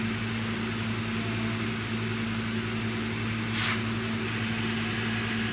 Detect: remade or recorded recorded